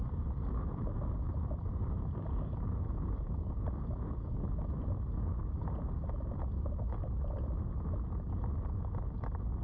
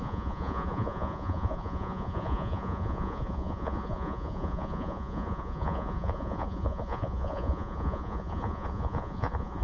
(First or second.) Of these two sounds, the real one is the first